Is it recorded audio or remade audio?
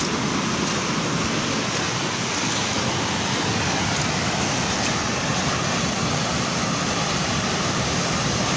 recorded